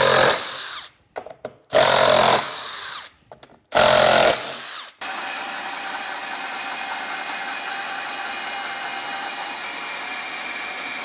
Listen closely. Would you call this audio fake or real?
real